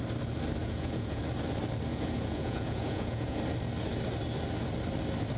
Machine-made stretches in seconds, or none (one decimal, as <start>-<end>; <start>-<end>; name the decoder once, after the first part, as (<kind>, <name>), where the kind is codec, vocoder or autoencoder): 0.6-1.2 (vocoder, Vocos); 1.9-3.4